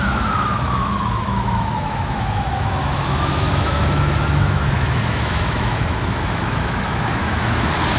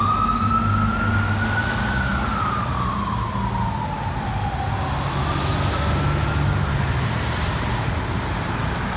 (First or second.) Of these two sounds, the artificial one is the first